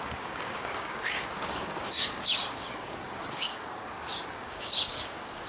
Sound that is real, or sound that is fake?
fake